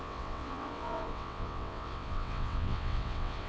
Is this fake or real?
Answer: fake